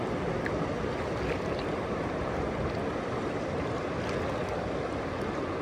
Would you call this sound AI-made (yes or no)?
no